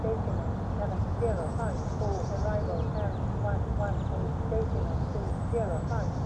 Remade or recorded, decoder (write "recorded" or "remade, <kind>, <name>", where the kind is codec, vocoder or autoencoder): recorded